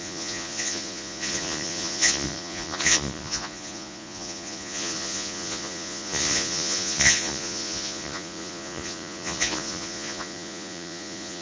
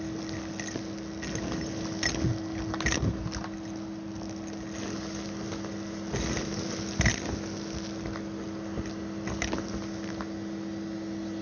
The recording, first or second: second